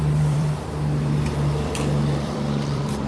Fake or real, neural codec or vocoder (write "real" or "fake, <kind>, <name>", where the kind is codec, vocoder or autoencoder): fake, vocoder, BigVGAN v2